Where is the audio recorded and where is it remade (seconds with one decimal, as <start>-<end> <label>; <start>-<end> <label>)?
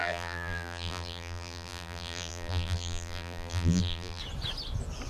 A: 0.0-4.2 remade; 4.2-5.1 recorded